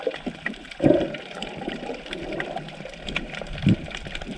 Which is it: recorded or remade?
remade